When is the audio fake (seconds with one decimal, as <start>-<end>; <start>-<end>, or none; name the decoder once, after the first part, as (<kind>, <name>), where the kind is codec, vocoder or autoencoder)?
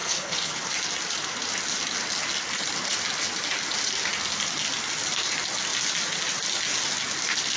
0.0-0.7 (codec, HILCodec)